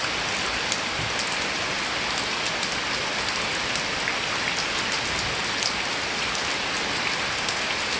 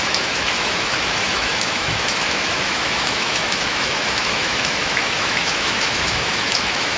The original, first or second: first